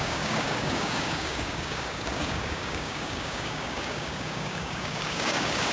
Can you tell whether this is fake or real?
fake